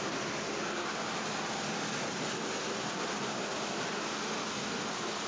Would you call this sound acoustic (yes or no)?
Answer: yes